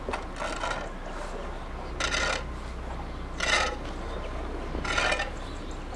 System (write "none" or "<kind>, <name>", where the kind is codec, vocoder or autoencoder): none